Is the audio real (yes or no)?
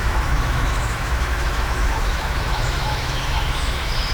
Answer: no